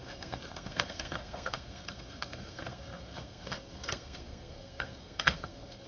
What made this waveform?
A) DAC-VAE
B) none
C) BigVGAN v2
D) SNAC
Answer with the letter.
D